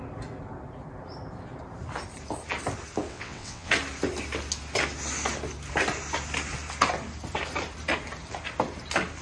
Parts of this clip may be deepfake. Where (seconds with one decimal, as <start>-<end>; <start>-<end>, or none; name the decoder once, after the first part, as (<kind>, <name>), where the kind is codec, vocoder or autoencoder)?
3.1-3.7 (vocoder, WaveNeXt)